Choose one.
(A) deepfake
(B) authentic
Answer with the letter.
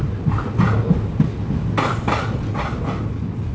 B